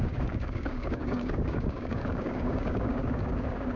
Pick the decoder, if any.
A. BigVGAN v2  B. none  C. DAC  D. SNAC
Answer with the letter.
C